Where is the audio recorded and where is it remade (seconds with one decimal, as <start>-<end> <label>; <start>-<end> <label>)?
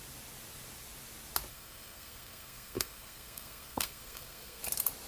0.0-1.5 recorded; 1.5-4.6 remade; 4.6-5.1 recorded